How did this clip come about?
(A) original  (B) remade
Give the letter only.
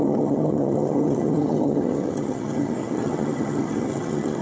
B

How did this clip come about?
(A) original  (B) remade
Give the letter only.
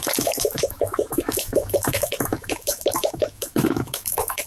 B